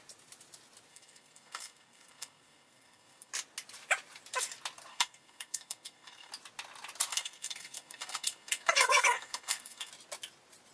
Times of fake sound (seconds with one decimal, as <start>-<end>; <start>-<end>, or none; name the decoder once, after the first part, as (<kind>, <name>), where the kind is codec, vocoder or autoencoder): 0.9-3.3 (codec, SNAC); 4.9-6.3; 7.1-9.9